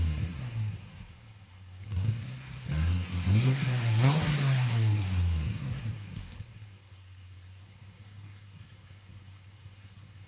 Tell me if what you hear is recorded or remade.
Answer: remade